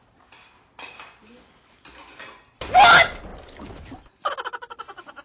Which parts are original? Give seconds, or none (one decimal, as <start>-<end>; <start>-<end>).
0.0-5.2